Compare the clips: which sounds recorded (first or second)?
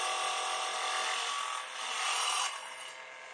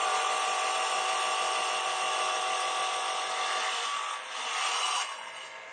first